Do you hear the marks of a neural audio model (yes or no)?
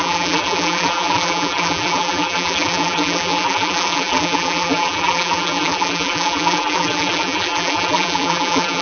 yes